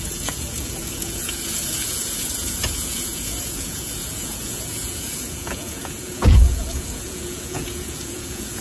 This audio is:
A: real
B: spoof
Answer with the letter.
B